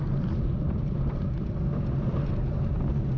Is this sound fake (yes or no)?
no